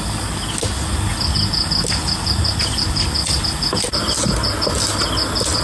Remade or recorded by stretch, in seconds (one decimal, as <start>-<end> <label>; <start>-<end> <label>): 0.0-5.6 recorded